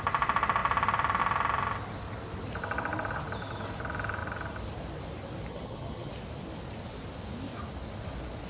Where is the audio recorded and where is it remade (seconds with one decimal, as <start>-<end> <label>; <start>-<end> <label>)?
0.0-5.5 recorded; 5.5-6.1 remade; 6.1-8.5 recorded